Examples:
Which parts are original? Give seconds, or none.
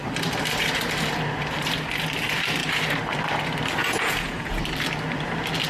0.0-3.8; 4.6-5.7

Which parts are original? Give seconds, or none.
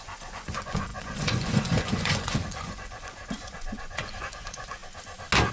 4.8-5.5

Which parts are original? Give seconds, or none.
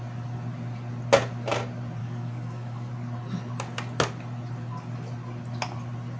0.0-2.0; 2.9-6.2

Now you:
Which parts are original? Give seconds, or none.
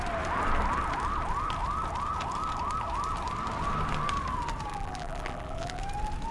0.0-4.7; 5.8-6.3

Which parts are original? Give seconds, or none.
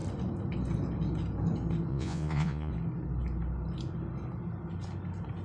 0.0-1.9; 2.7-5.4